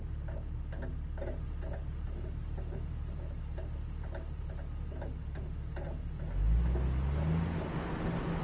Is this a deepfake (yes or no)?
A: no